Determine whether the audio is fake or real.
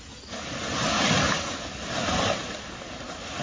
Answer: real